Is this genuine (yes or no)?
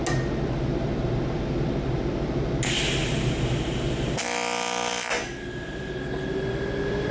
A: yes